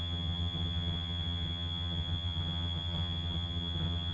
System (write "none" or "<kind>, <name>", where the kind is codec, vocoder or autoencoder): vocoder, HiFi-GAN